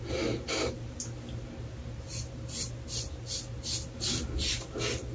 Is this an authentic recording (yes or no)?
yes